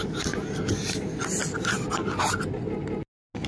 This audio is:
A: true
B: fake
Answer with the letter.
A